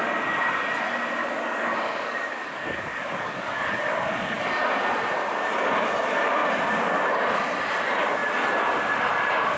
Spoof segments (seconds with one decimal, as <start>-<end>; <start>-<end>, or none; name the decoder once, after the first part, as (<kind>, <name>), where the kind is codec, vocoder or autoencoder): 1.2-4.4 (codec, DAC)